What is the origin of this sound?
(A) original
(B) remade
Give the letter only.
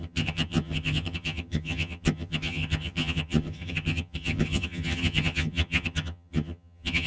B